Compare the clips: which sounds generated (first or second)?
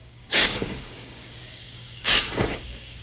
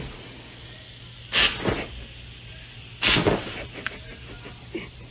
first